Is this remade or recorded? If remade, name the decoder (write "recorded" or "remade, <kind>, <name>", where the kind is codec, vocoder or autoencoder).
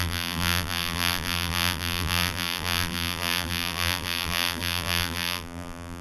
remade, vocoder, BigVGAN v2